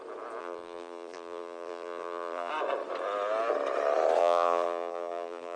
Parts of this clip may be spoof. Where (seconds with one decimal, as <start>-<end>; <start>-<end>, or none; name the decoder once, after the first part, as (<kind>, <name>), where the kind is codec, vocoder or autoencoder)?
0.4-2.5 (vocoder, BigVGAN v2); 4.2-5.6